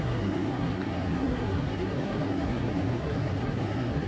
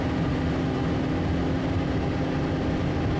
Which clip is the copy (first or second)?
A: first